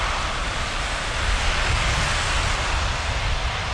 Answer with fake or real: real